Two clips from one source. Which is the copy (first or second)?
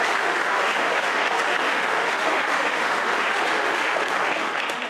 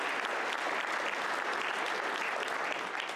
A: first